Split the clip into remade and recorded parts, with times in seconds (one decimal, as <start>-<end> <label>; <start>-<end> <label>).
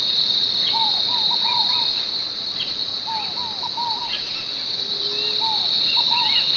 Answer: 0.0-2.9 remade; 2.9-4.0 recorded; 4.0-4.9 remade; 4.9-5.7 recorded; 5.7-6.6 remade